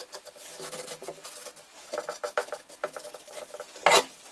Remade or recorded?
recorded